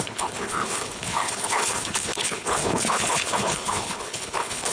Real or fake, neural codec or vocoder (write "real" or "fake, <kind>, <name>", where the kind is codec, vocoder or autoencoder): fake, codec, HILCodec